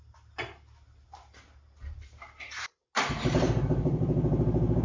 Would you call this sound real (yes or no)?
yes